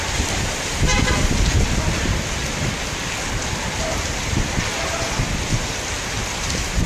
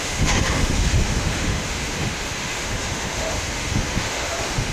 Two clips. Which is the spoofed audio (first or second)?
second